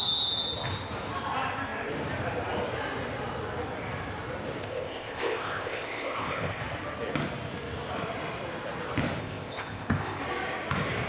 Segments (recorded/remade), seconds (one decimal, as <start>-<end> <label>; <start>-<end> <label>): 0.0-4.6 recorded; 4.6-6.6 remade; 6.6-9.2 recorded; 9.2-10.2 remade; 10.2-11.1 recorded